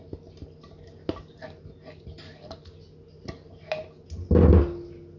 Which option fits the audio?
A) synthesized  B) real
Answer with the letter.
B